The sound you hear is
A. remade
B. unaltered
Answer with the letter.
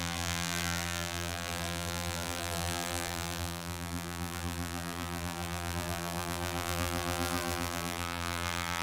A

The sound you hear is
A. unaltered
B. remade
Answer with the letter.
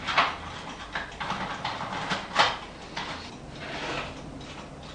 A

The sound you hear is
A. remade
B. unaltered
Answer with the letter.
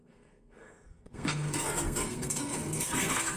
A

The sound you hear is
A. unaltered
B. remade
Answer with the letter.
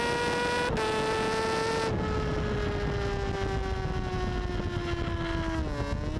A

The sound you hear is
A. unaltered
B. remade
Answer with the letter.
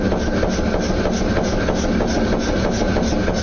A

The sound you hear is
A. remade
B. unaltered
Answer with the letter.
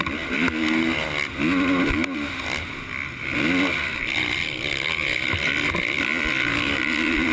B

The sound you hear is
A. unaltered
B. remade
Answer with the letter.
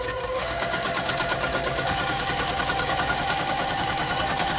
B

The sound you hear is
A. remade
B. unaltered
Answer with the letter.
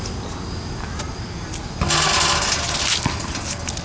B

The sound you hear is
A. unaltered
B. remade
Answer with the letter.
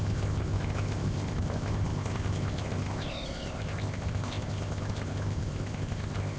B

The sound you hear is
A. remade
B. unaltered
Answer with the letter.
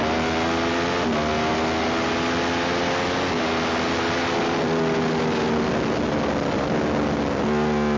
B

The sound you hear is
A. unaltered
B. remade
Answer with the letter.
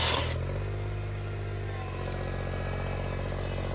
A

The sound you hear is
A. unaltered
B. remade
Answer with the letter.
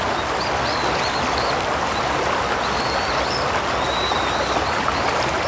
A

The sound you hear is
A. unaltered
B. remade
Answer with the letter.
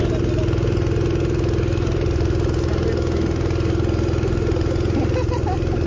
A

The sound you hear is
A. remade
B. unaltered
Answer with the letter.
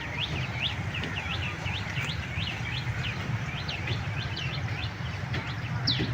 B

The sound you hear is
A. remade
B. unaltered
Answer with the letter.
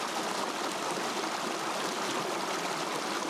B